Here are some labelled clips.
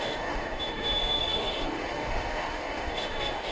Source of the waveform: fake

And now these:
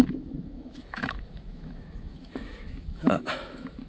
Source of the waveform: fake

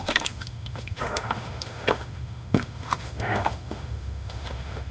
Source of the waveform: fake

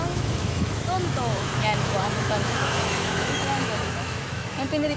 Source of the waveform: fake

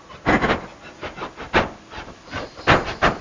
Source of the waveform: real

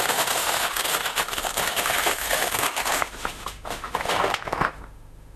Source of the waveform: fake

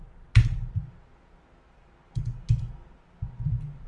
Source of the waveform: real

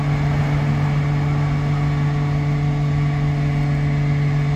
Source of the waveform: real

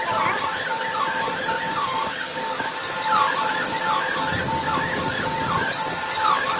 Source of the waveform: real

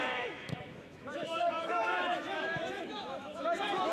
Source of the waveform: fake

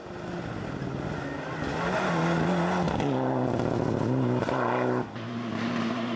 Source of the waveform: real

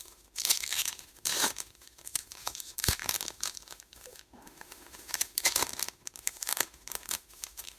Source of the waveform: fake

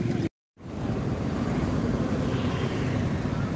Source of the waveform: real